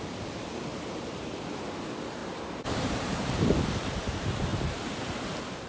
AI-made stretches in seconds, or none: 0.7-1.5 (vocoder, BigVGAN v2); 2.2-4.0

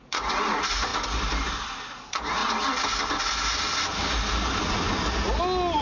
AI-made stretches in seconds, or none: 0.0-0.9 (vocoder, Vocos); 1.9-2.4